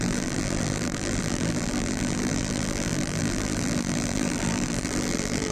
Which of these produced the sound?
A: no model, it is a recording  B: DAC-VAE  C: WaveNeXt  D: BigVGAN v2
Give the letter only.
D